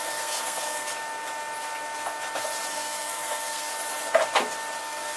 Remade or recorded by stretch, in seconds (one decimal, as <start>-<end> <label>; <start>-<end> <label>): 0.0-0.9 remade; 0.9-2.7 recorded; 2.7-3.7 remade; 3.7-4.8 recorded; 4.8-5.2 remade